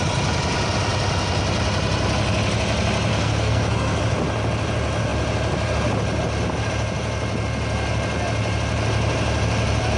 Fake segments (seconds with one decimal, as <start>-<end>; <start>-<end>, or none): 3.1-4.0